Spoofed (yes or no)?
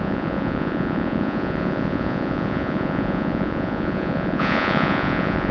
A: yes